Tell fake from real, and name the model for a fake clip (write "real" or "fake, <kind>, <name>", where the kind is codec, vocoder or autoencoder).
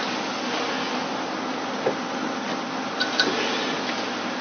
real